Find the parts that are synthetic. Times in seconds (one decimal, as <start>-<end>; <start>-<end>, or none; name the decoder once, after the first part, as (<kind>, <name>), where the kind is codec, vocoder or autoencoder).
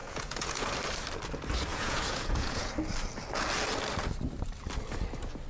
0.0-0.7 (vocoder, Vocos); 1.7-2.7